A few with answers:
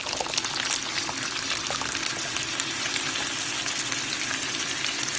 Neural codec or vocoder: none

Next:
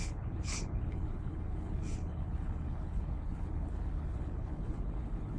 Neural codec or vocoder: codec, HILCodec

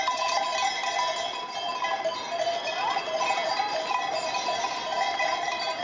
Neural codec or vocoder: none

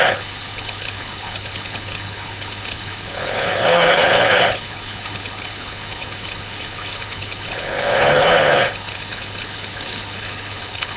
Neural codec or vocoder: codec, HILCodec